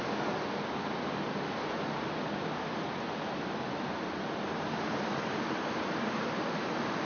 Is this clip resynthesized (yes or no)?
yes